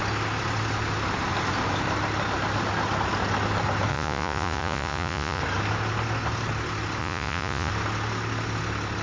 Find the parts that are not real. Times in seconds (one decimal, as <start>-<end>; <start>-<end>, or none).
3.9-5.4; 7.0-7.7